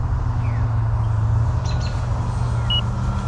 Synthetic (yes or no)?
no